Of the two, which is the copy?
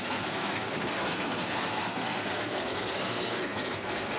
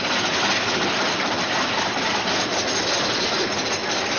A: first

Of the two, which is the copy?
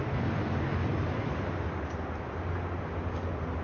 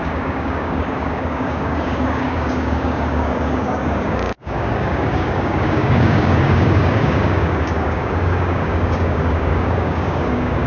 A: second